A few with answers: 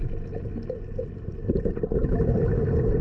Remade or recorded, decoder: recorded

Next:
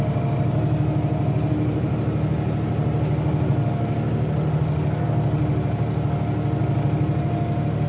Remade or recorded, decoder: recorded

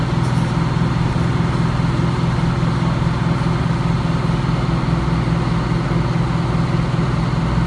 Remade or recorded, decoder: recorded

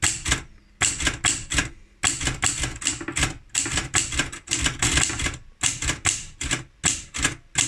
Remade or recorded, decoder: recorded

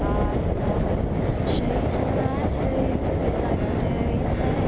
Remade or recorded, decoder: recorded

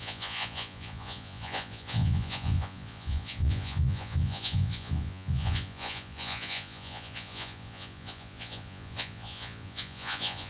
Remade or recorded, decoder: remade, vocoder, Vocos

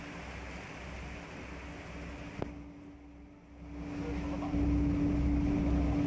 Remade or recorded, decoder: recorded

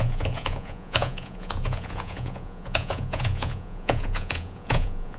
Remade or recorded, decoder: remade, vocoder, Vocos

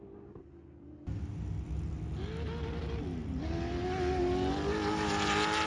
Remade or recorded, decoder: recorded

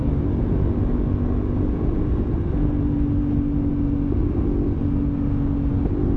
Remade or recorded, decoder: recorded